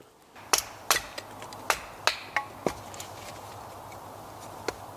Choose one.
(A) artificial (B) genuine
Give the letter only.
B